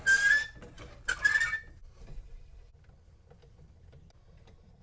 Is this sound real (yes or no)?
yes